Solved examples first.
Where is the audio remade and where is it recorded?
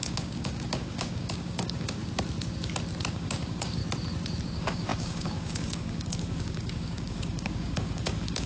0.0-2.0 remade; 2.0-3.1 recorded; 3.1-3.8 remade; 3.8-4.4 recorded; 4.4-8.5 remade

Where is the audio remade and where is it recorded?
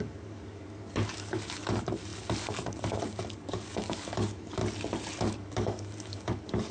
0.0-4.6 remade; 4.6-5.2 recorded; 5.2-6.7 remade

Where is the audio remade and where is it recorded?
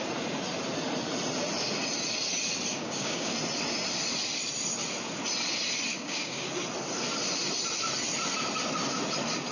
0.0-2.7 recorded; 2.7-3.3 remade; 3.3-5.9 recorded; 5.9-6.5 remade; 6.5-9.5 recorded